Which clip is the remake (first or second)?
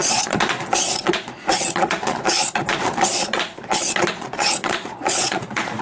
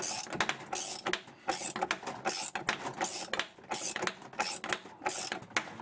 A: first